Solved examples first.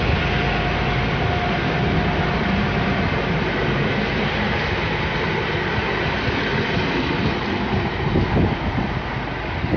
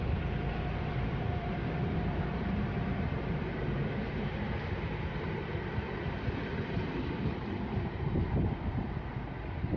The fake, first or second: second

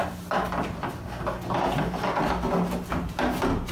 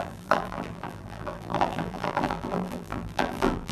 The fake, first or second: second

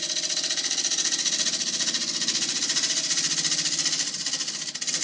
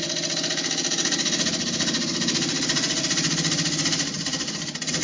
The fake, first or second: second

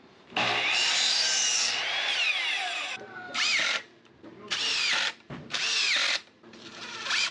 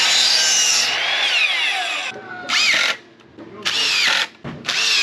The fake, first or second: first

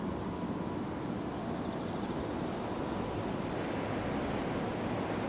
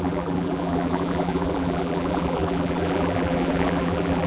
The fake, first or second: second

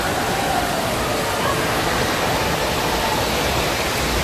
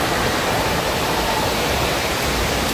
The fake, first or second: second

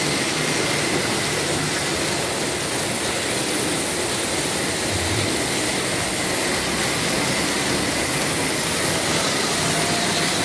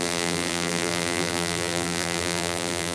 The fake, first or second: second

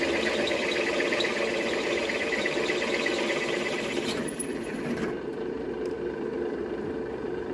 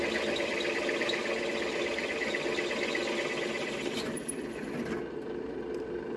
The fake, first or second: first